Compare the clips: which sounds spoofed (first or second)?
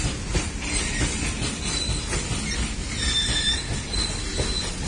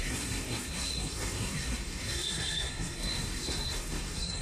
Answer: second